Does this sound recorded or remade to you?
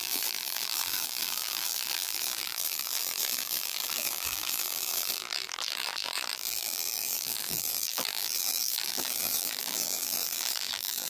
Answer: remade